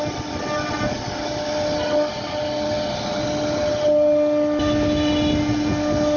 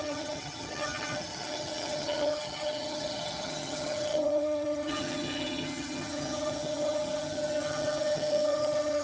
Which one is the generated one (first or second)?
second